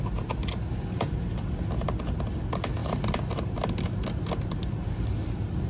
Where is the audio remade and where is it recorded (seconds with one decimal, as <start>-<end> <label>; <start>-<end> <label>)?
0.0-5.7 recorded